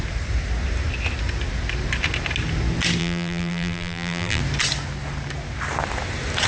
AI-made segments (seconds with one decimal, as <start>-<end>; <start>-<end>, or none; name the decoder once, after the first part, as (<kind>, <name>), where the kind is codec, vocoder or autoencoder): 3.0-4.4 (vocoder, BigVGAN v2)